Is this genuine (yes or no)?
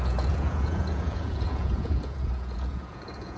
no